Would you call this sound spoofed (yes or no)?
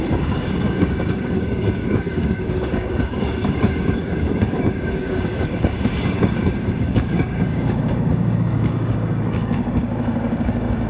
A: yes